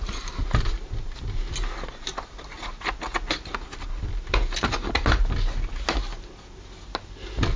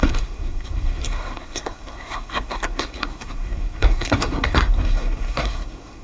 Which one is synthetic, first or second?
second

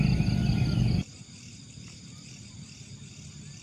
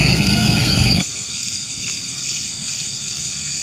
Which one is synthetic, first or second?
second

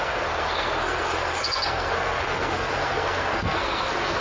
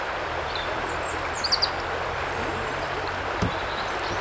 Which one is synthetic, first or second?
first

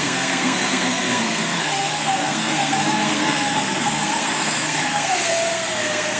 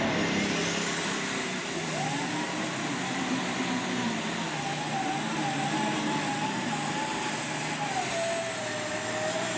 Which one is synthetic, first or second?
first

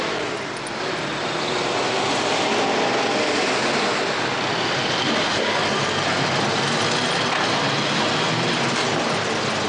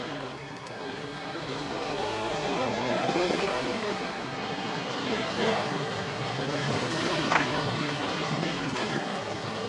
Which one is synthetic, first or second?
second